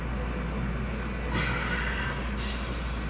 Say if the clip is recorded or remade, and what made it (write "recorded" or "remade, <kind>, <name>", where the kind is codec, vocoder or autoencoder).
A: recorded